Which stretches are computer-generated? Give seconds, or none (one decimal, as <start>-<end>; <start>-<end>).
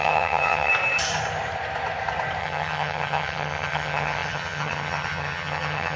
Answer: 0.0-0.7; 2.4-6.0